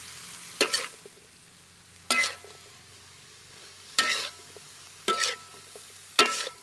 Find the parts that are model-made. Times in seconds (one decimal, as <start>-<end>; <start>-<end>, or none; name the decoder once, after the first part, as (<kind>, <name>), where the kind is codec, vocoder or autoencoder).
2.9-5.1 (codec, DAC); 5.5-6.6